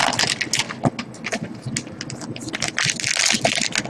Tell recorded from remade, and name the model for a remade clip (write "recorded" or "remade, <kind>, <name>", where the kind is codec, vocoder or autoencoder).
recorded